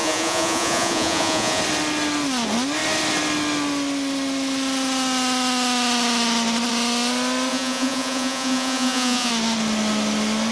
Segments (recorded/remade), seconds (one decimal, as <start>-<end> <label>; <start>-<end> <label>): 0.0-1.6 remade; 1.6-7.5 recorded; 7.5-9.3 remade; 9.3-10.5 recorded